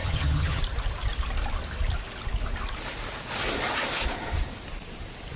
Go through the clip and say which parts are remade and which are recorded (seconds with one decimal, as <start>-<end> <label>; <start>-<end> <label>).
0.0-0.6 remade; 0.6-5.4 recorded